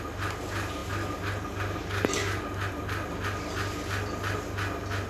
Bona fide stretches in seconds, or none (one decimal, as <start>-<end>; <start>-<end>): 0.0-5.1

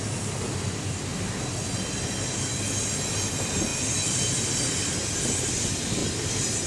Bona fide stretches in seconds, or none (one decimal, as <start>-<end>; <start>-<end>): 1.1-2.2; 6.0-6.7

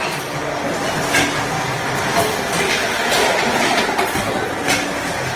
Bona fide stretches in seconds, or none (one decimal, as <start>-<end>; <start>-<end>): 0.0-5.4

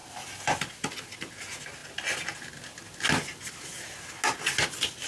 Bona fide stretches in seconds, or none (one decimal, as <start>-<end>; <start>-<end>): 0.0-5.1

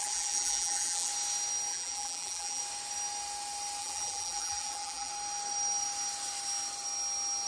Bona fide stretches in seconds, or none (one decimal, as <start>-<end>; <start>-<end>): 1.1-1.7; 2.6-3.8; 5.1-7.5

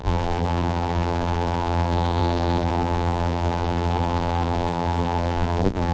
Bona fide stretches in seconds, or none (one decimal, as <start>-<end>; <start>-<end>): none